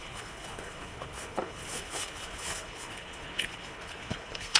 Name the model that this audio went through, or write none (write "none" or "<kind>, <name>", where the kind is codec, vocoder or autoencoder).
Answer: codec, HILCodec